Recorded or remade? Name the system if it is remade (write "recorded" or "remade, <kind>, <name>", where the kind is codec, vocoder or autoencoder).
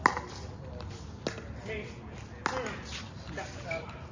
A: recorded